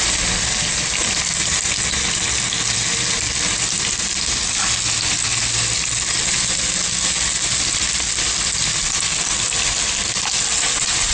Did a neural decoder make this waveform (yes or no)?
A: no